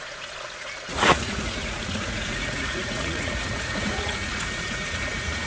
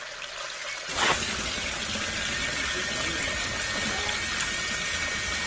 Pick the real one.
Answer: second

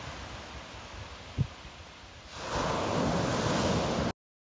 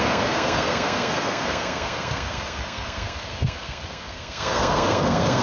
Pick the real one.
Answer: first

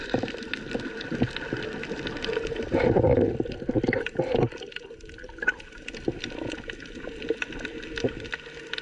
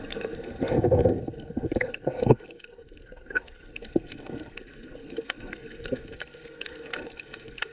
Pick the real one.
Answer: first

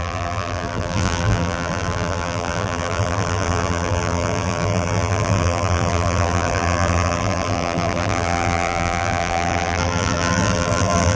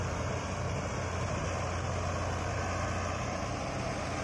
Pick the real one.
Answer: second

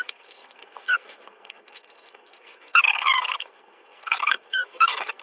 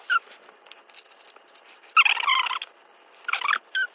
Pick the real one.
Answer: second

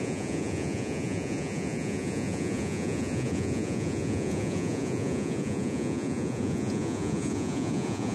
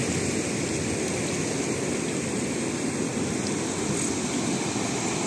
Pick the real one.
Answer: second